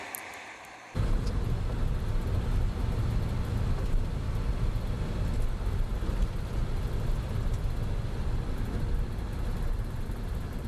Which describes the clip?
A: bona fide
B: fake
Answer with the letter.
A